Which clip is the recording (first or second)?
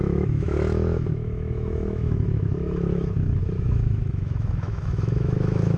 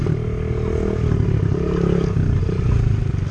second